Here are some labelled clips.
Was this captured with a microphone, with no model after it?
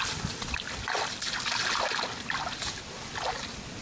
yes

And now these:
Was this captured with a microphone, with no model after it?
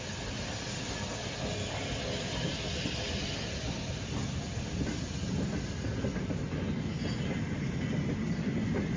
yes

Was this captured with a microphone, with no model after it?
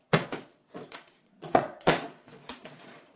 no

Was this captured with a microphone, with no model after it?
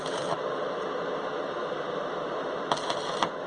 yes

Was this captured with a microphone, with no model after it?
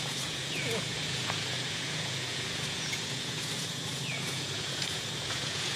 no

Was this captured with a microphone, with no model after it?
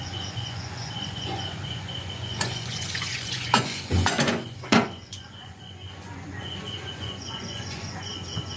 no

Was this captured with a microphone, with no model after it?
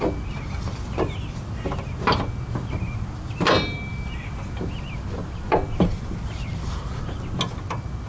yes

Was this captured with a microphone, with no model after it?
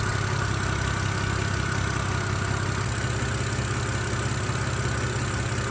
yes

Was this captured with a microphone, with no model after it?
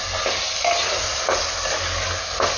yes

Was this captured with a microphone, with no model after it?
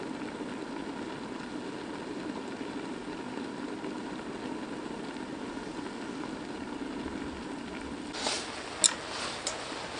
yes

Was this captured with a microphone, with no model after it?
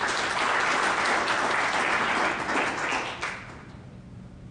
yes